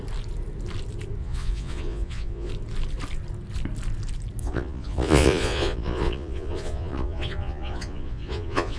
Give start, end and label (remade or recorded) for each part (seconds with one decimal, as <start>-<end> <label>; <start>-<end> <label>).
0.0-1.2 recorded; 1.2-2.5 remade; 2.5-4.4 recorded; 4.4-8.8 remade